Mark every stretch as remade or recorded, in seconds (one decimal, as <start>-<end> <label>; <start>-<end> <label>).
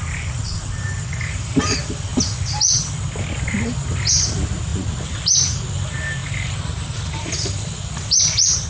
0.0-2.1 remade; 2.1-4.1 recorded; 4.1-8.7 remade